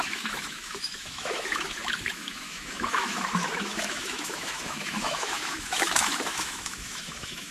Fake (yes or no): yes